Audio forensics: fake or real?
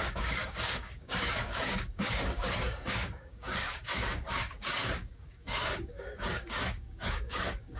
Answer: fake